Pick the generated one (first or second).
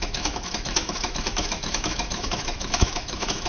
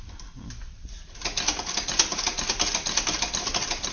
first